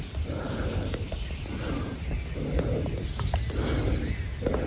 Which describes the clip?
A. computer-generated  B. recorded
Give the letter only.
B